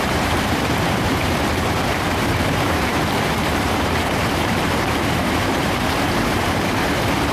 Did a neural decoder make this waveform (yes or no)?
yes